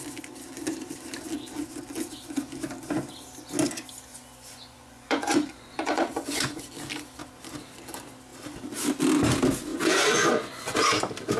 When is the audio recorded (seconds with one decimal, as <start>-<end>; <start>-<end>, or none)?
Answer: 0.0-4.1; 6.6-9.7; 10.8-11.4